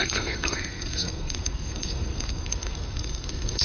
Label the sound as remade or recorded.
remade